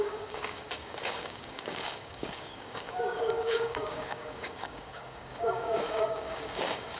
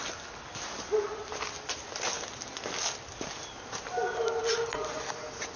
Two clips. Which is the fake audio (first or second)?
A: first